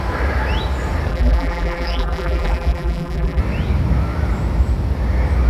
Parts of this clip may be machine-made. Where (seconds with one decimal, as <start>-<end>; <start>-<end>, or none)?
1.1-3.4

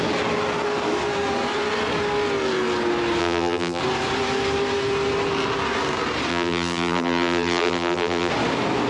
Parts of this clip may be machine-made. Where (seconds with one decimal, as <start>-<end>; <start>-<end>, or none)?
3.2-3.8; 6.3-8.3

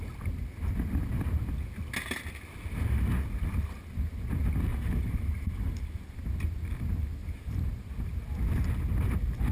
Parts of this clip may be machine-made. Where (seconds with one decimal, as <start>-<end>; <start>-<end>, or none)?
4.7-6.4; 7.2-7.9

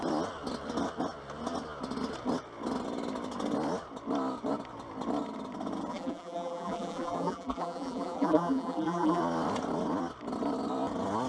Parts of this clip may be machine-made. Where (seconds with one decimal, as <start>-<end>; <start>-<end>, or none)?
5.9-9.2